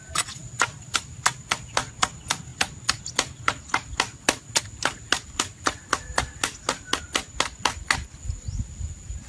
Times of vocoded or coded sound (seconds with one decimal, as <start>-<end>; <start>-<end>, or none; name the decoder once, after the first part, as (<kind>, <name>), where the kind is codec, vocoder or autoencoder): 0.4-1.0 (vocoder, BigVGAN v2)